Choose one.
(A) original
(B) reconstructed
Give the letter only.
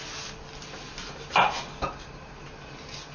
A